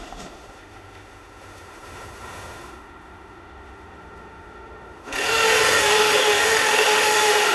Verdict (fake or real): fake